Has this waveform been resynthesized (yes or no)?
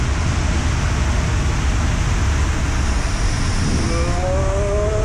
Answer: no